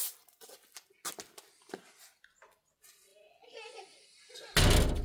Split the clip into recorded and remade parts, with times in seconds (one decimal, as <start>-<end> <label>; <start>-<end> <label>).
0.0-5.0 recorded